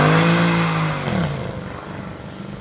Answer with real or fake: real